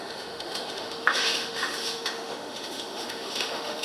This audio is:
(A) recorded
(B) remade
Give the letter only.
B